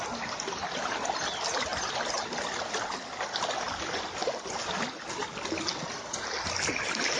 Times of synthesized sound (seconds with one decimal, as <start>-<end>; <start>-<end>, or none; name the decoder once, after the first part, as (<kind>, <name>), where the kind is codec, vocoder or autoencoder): none